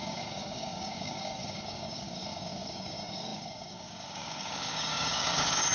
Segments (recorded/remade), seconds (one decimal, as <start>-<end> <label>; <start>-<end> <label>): 0.0-5.7 remade